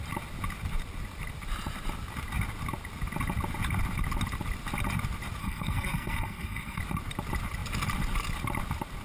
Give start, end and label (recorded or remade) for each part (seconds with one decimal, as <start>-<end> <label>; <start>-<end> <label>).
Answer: 0.0-5.4 recorded; 5.4-6.8 remade; 6.8-9.0 recorded